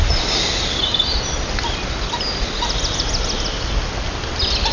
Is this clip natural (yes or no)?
yes